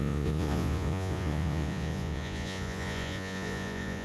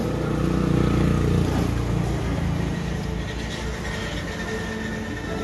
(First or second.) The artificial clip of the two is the first